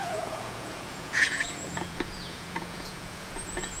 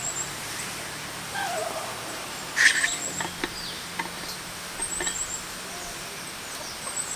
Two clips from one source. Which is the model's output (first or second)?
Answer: first